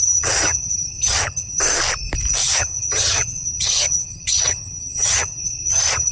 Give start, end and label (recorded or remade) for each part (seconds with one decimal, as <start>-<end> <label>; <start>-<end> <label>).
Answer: 0.0-1.6 remade; 1.6-2.4 recorded; 2.4-6.1 remade